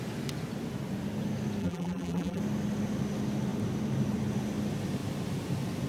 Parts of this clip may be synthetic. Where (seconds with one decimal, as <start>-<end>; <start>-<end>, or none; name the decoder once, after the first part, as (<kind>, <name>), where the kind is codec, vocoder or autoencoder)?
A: 1.6-2.4 (vocoder, BigVGAN v2)